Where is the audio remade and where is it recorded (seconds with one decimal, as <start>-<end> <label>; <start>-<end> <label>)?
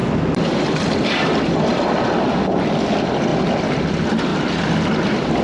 0.0-2.7 remade; 2.7-4.3 recorded; 4.3-5.4 remade